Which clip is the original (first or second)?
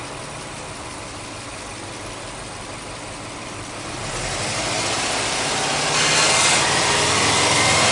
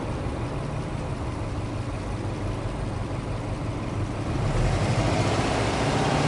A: first